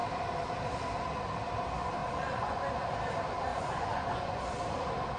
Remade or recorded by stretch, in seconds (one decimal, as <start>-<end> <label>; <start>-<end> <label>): 0.0-2.0 recorded; 2.0-2.6 remade; 2.6-3.5 recorded; 3.5-4.4 remade; 4.4-5.2 recorded